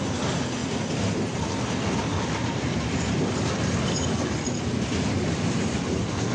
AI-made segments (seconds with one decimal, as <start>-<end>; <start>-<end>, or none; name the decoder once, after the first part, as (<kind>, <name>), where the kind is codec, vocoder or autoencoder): none